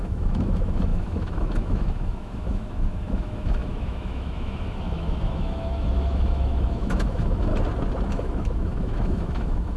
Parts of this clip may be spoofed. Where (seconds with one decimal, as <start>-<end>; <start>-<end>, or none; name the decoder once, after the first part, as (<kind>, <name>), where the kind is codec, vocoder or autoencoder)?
0.0-7.5 (autoencoder, DAC-VAE); 8.1-9.8